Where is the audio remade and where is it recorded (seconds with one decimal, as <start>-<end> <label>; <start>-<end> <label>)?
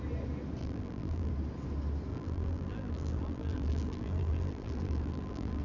0.0-0.6 recorded; 0.6-1.3 remade; 1.3-2.1 recorded; 2.1-5.6 remade